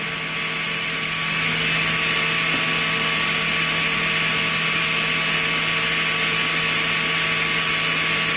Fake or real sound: real